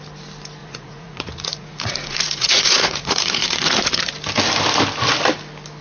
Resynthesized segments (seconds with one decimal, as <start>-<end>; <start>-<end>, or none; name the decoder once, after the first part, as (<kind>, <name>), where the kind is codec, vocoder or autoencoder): 0.6-4.1 (vocoder, Vocos)